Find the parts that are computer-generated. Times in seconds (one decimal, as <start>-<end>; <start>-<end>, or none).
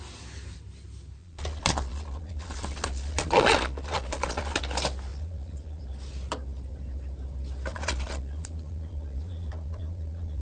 1.2-4.6; 5.1-5.8; 7.7-10.4